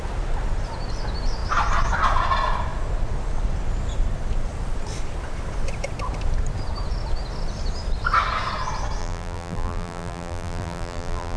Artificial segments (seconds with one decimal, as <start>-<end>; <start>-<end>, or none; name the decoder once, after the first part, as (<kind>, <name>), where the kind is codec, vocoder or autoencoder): 9.0-11.4 (vocoder, BigVGAN v2)